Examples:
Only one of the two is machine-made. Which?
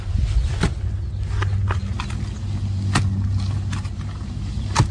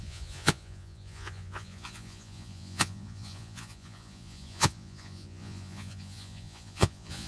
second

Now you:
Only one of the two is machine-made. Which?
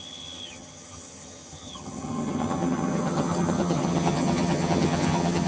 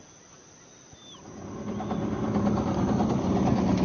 first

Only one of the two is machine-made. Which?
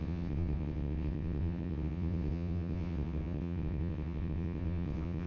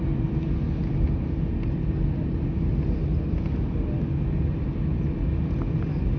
first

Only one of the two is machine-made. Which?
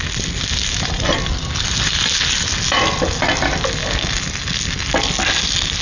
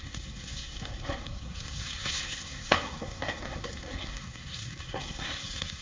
second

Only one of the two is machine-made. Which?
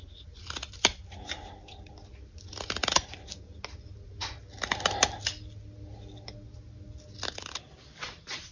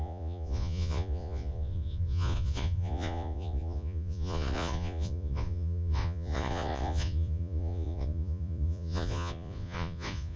second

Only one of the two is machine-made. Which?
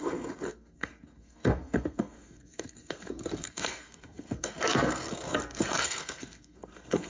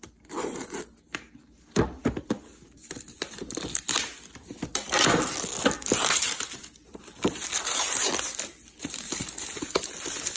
first